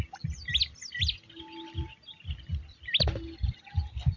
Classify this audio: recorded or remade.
recorded